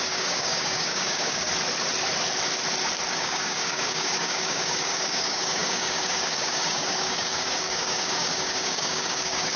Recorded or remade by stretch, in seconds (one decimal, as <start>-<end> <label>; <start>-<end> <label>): 0.0-1.5 remade; 1.5-3.1 recorded; 3.1-9.6 remade